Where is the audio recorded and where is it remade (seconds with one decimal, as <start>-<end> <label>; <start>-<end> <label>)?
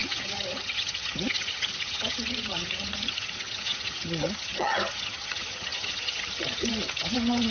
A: 0.0-7.5 remade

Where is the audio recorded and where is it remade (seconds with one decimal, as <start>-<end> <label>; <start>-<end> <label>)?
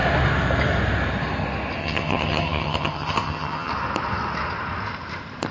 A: 0.0-1.8 recorded; 1.8-3.7 remade; 3.7-5.5 recorded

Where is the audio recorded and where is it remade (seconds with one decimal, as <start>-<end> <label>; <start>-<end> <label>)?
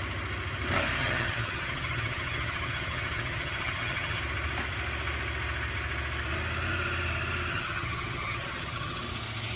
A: 0.0-1.0 recorded; 1.0-4.2 remade; 4.2-7.5 recorded; 7.5-9.0 remade; 9.0-9.6 recorded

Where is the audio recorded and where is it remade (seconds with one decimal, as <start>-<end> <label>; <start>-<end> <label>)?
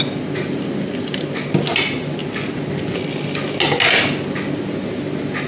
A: 0.0-5.5 recorded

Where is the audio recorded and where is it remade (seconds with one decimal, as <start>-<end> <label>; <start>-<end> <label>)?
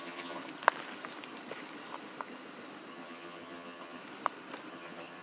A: 0.0-0.4 remade; 0.4-2.9 recorded; 2.9-4.0 remade; 4.0-4.7 recorded; 4.7-5.2 remade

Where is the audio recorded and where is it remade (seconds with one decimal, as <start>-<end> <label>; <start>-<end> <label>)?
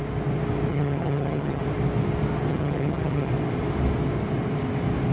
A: 0.0-0.7 recorded; 0.7-1.6 remade; 1.6-2.5 recorded; 2.5-3.3 remade; 3.3-5.1 recorded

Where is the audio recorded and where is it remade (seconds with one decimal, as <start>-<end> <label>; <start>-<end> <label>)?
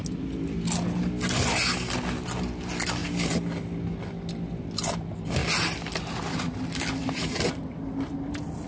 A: 0.0-8.7 recorded